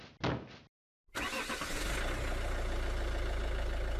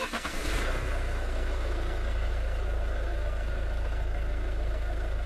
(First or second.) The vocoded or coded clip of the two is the second